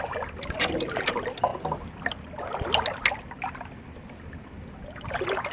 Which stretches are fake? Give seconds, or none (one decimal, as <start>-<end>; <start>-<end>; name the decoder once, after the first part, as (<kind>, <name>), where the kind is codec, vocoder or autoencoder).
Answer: none